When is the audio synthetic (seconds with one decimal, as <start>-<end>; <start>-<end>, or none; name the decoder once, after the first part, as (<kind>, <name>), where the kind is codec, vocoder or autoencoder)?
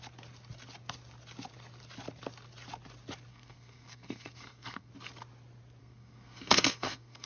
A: 3.3-4.9 (codec, SNAC); 5.8-7.3